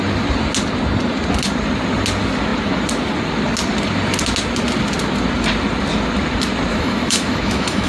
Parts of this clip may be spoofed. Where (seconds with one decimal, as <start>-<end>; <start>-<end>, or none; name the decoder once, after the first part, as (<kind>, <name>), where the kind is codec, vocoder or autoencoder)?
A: 6.7-7.9 (autoencoder, DAC-VAE)